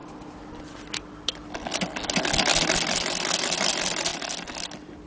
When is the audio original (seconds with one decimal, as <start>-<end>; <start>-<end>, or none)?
0.0-5.1